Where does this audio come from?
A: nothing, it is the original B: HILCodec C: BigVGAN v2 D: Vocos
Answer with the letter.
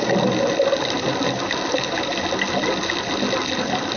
A